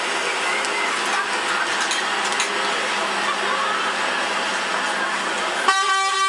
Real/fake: real